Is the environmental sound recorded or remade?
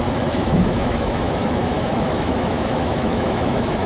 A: remade